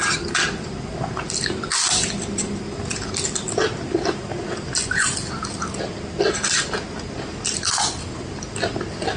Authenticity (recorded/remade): recorded